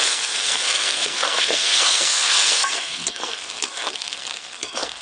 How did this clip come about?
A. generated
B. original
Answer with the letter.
A